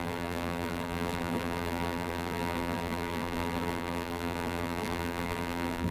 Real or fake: fake